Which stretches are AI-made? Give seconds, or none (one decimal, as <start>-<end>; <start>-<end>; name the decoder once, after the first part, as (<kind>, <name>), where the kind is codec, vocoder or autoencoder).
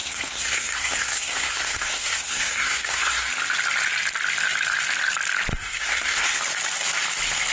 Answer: 0.0-3.3 (codec, SNAC); 5.5-6.4